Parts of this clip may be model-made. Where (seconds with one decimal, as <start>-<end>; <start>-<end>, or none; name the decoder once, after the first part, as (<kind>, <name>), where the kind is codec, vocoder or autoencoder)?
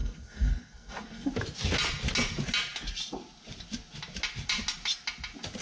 0.0-1.3 (codec, SNAC)